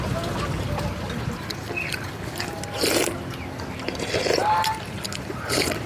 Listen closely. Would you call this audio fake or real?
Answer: real